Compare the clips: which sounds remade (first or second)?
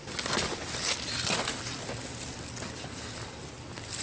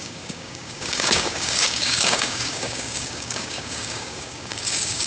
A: second